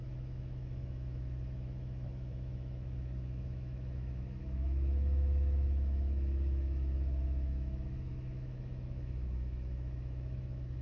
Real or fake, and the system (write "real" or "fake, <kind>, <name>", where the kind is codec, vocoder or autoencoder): fake, autoencoder, DAC-VAE